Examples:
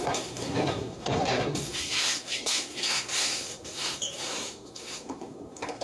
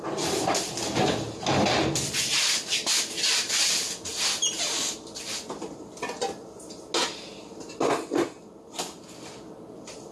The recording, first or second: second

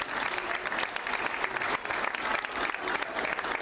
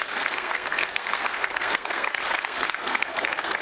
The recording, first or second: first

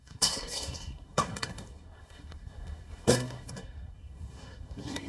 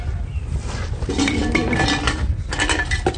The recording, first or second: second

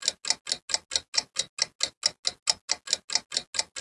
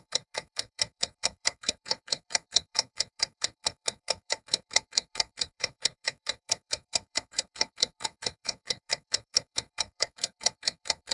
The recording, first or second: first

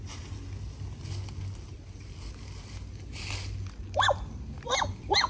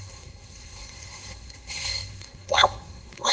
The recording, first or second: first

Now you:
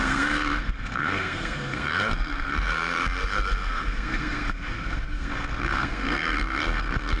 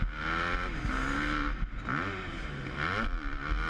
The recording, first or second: second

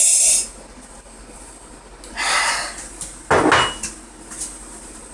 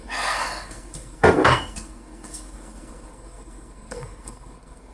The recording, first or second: first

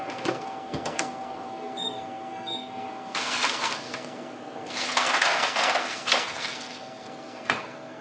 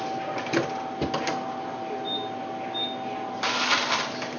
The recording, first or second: second